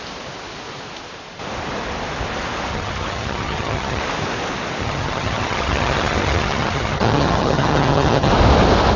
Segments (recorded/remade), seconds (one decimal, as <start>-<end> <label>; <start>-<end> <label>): 0.0-2.7 recorded; 2.7-4.0 remade; 4.0-4.8 recorded; 4.8-8.3 remade; 8.3-9.0 recorded